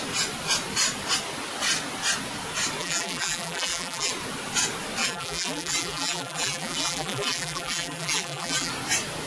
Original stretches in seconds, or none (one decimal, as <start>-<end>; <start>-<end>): 0.0-2.8; 4.1-5.0; 8.7-9.3